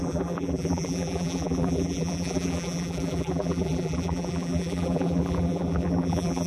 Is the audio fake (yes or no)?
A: yes